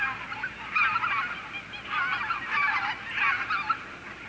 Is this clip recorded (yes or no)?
yes